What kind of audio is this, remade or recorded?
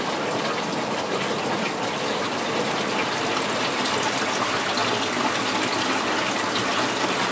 recorded